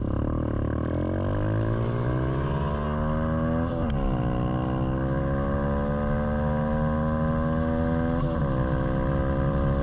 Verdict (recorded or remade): recorded